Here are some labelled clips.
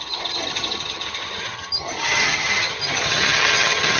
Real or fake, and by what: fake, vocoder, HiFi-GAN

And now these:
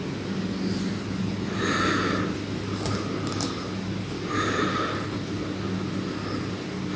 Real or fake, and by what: real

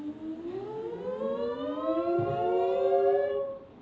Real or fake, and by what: real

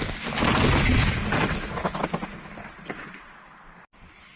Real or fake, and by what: real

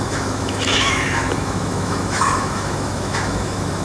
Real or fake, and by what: fake, autoencoder, DAC-VAE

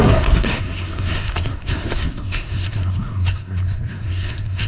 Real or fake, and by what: fake, codec, SNAC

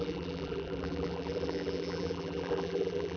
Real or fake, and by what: fake, vocoder, BigVGAN v2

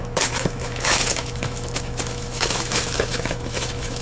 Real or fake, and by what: fake, autoencoder, DAC-VAE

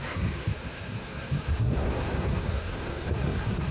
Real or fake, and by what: fake, codec, SNAC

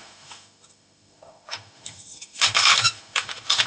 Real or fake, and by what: fake, autoencoder, DAC-VAE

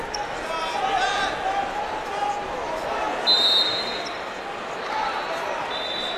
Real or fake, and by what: real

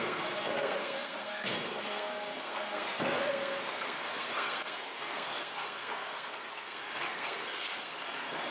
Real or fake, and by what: fake, codec, SNAC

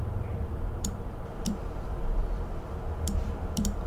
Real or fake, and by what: fake, vocoder, BigVGAN v2